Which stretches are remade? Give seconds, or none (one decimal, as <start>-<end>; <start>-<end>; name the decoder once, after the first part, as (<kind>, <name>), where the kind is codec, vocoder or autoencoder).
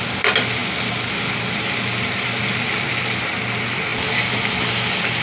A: none